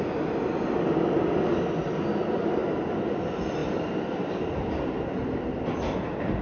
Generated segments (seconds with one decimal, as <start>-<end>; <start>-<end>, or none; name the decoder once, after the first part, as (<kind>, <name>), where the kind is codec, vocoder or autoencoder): none